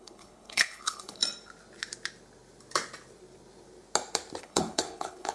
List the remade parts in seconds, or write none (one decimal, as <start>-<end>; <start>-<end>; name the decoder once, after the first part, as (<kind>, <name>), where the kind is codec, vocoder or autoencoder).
0.0-1.2 (codec, HILCodec); 4.4-5.3

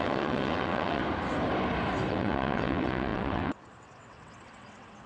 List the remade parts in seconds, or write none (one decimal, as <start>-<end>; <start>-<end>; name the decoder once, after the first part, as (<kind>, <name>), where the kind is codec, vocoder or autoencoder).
0.0-1.0 (vocoder, WaveNeXt); 2.1-5.1

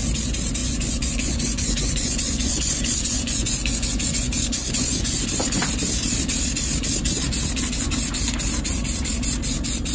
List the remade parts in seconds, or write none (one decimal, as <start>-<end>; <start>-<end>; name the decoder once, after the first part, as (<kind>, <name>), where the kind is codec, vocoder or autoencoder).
0.6-5.2 (vocoder, Vocos)

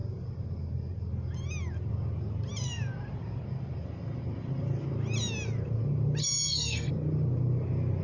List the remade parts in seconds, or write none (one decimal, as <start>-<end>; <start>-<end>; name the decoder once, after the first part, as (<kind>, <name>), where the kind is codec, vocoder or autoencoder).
6.2-6.9 (codec, SNAC)